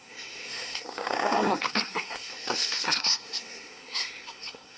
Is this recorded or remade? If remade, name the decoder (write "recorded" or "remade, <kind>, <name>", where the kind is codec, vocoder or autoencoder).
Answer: remade, codec, SNAC